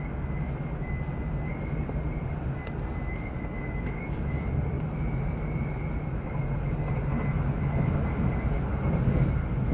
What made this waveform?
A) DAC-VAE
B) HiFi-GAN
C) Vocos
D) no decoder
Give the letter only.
D